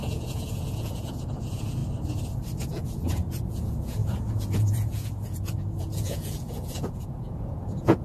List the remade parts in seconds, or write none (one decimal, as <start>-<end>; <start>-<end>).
0.0-1.8; 2.7-8.0